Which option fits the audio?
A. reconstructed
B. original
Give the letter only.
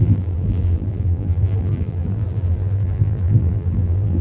A